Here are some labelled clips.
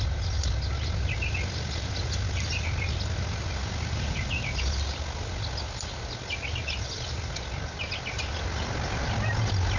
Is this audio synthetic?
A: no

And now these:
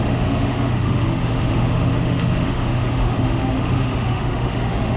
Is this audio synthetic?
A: yes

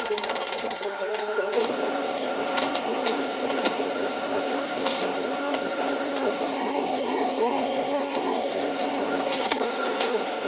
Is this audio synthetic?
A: yes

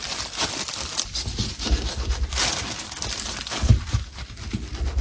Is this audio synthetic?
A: no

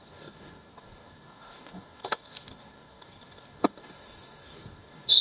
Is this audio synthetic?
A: yes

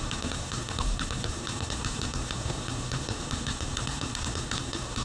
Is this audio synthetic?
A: yes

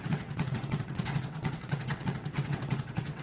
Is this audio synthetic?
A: yes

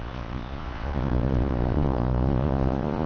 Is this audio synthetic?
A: yes